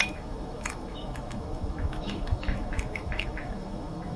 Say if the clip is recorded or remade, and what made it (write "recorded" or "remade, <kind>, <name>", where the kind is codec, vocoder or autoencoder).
remade, autoencoder, DAC-VAE